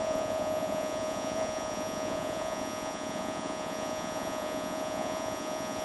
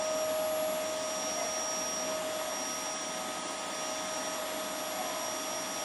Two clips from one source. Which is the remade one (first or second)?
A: first